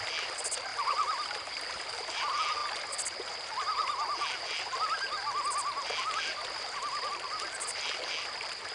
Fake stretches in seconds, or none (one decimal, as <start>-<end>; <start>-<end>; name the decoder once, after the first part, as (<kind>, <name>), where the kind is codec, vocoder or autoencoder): 0.7-2.2 (vocoder, BigVGAN v2)